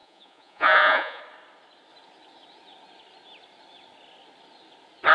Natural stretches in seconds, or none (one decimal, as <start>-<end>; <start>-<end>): 1.2-5.1